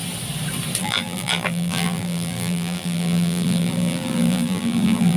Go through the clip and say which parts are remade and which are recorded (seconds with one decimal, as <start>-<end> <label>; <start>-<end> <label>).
0.0-0.8 recorded; 0.8-5.2 remade

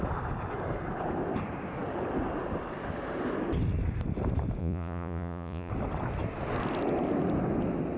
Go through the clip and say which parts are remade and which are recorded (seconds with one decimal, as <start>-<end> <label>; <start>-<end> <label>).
0.0-4.6 recorded; 4.6-5.7 remade; 5.7-8.0 recorded

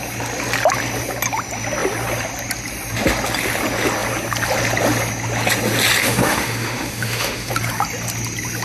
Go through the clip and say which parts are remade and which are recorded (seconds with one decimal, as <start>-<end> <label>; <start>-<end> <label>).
0.0-6.0 recorded; 6.0-7.5 remade; 7.5-8.6 recorded

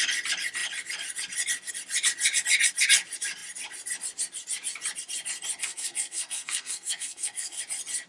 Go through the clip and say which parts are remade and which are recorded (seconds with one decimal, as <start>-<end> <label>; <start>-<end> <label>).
0.0-5.6 recorded; 5.6-7.6 remade; 7.6-8.1 recorded

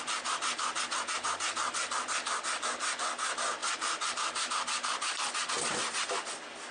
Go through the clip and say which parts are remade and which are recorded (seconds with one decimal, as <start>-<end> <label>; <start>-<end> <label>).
0.0-6.7 recorded

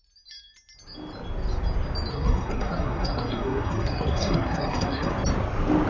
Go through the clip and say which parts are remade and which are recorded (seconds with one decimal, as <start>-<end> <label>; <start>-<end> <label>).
0.0-2.1 recorded; 2.1-5.1 remade; 5.1-5.9 recorded

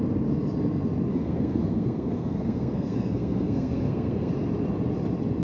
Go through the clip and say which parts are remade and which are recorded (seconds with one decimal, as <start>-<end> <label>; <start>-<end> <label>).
0.0-1.1 recorded; 1.1-4.3 remade; 4.3-5.4 recorded

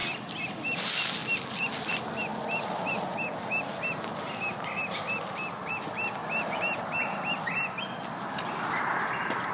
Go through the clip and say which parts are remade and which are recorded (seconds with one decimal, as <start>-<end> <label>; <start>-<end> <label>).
0.0-6.2 recorded; 6.2-7.3 remade; 7.3-9.5 recorded